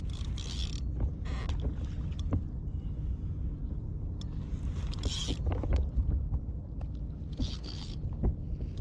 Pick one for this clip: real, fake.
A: real